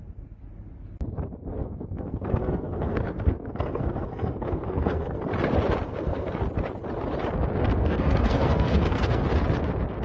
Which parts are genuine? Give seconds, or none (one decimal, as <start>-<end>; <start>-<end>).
0.0-1.5; 5.2-5.9; 6.4-7.8; 9.2-10.0

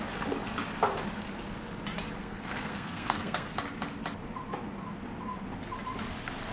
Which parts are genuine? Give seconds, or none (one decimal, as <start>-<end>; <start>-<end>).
0.0-2.2; 3.5-6.5

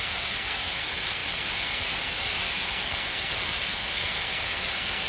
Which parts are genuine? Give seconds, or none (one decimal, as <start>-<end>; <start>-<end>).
none

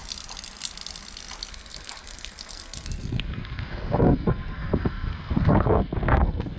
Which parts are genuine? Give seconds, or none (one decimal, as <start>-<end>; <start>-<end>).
0.0-1.5

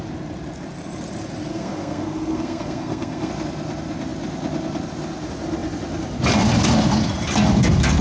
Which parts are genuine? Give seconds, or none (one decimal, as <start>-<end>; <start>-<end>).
0.0-1.5; 3.3-8.0

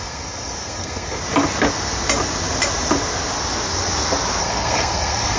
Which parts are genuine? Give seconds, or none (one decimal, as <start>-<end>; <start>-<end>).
1.2-4.4

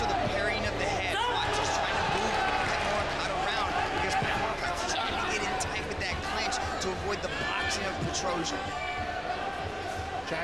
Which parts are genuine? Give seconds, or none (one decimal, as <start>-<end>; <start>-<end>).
0.0-4.2; 5.1-8.4; 9.2-10.4

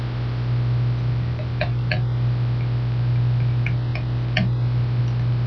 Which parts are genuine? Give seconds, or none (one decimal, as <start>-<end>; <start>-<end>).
0.0-5.5